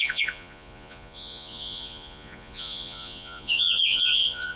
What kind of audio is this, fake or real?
fake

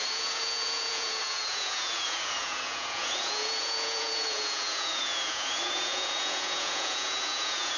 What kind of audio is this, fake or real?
fake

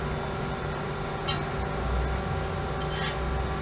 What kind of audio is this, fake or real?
real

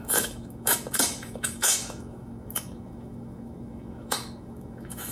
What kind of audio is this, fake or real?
fake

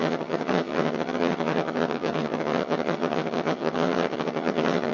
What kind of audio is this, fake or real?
fake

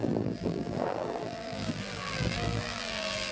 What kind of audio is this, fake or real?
fake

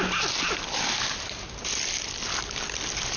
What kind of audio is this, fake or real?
real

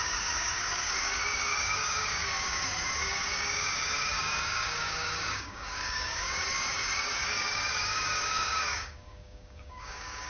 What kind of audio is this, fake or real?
fake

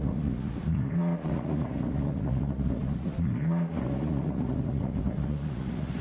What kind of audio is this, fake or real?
fake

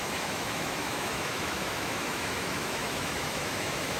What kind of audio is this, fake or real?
fake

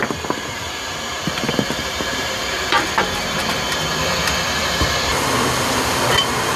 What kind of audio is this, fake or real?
fake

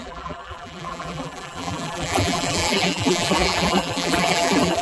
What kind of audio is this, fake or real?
fake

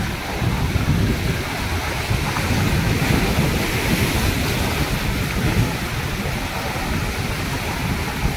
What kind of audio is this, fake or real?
real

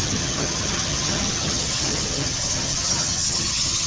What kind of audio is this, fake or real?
fake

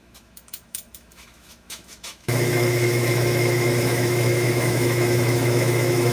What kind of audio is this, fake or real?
fake